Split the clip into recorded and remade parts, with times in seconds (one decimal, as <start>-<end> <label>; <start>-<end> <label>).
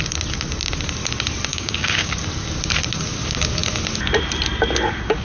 0.0-1.5 recorded; 1.5-2.1 remade; 2.1-5.2 recorded